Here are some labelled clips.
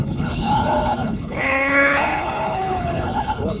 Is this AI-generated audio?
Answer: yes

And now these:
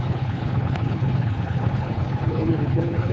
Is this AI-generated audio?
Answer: yes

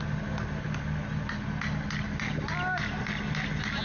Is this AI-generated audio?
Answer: no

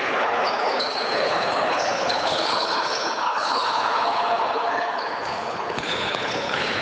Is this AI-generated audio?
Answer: yes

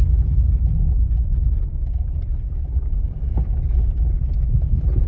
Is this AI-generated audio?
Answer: no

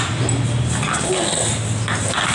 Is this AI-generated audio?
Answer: no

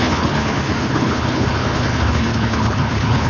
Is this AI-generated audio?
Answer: yes